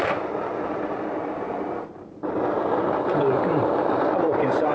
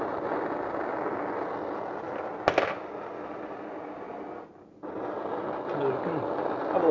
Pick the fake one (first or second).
first